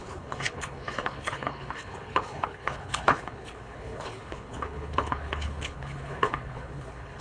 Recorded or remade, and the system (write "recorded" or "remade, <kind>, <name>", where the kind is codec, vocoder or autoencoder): remade, codec, HILCodec